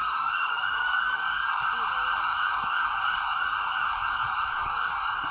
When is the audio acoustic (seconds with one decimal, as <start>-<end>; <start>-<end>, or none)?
1.7-2.3